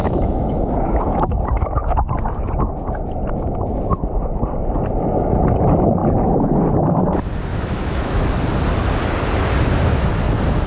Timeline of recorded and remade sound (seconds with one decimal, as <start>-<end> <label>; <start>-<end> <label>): 0.0-1.3 remade; 1.3-7.5 recorded; 7.5-8.3 remade; 8.3-10.7 recorded